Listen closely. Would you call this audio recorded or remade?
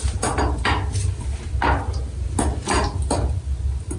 recorded